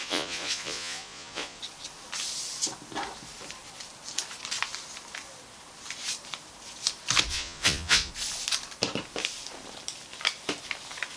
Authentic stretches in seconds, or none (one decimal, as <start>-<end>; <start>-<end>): 1.6-7.3; 8.1-11.2

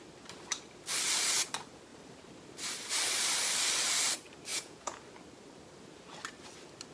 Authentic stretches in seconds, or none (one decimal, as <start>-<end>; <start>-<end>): 0.0-4.5; 5.0-6.9

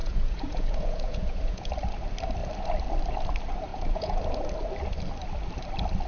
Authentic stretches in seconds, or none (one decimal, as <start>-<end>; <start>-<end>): 1.7-3.7; 4.2-6.1

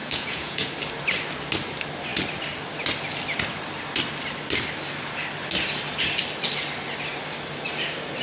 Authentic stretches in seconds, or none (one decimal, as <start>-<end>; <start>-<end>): 0.7-8.2

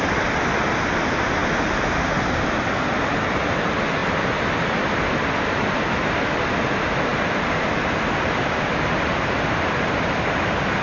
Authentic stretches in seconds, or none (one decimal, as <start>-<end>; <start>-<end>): 0.0-10.8

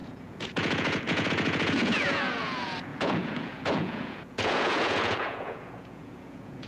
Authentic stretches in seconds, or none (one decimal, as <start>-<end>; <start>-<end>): none

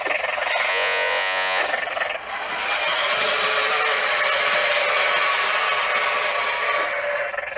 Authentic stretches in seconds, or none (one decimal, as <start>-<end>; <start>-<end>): 0.0-0.7; 1.6-7.6